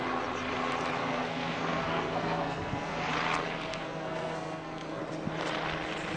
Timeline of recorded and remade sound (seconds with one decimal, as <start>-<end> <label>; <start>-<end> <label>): 0.0-1.0 recorded; 1.0-3.1 remade; 3.1-3.7 recorded; 3.7-5.0 remade; 5.0-6.2 recorded